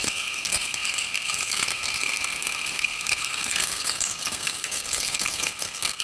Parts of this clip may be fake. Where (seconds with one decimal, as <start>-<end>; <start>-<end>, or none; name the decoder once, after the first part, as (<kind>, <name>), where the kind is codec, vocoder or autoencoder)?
0.0-6.0 (codec, SNAC)